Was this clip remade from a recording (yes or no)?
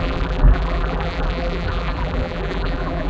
yes